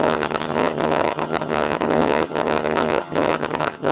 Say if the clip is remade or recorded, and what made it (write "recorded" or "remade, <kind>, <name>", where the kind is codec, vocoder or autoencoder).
remade, vocoder, HiFi-GAN